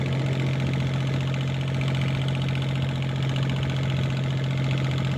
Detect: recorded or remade recorded